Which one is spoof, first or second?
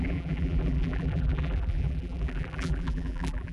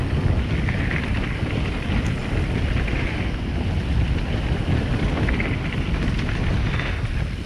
first